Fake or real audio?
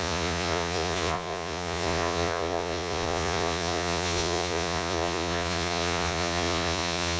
fake